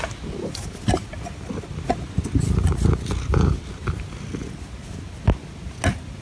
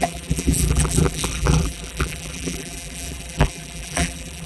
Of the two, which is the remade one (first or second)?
second